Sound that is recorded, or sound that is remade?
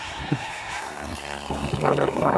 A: remade